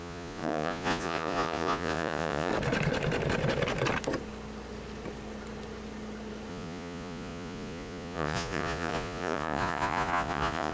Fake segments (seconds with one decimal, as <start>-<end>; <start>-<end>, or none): 0.0-2.5; 6.5-10.7